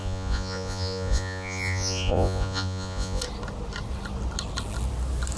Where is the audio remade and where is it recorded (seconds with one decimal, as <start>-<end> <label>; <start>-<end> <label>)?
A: 0.0-3.2 remade; 3.2-5.4 recorded